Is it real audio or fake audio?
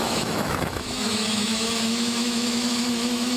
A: fake